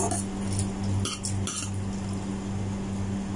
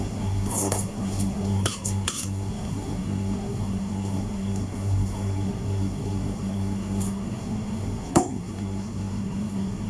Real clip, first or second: first